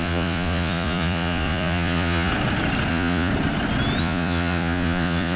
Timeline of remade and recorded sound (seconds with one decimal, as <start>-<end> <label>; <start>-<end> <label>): 0.0-2.3 remade; 2.3-2.9 recorded; 2.9-3.3 remade; 3.3-4.0 recorded; 4.0-5.4 remade